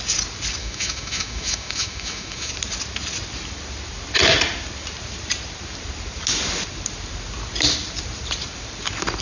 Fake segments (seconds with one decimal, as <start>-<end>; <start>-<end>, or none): 0.6-2.5